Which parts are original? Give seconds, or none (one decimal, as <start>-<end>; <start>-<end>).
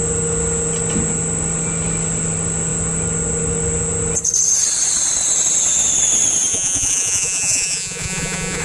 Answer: 0.0-6.5